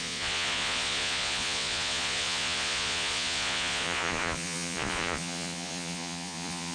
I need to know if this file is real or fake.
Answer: fake